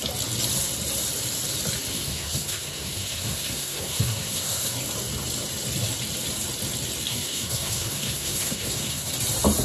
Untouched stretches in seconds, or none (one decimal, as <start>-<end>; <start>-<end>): 0.0-1.9; 4.8-7.1; 9.1-9.6